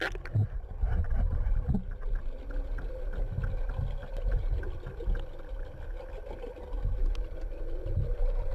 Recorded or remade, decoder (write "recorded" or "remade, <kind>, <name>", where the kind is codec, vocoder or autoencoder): recorded